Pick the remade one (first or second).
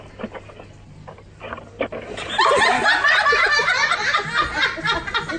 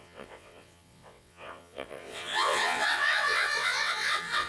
second